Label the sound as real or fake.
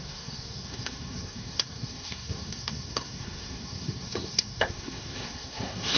fake